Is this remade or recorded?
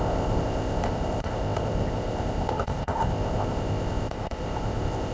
remade